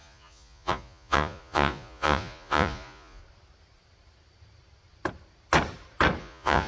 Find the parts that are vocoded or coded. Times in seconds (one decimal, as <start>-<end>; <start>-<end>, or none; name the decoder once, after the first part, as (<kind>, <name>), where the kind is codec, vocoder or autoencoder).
0.0-3.2 (vocoder, Vocos); 6.2-6.7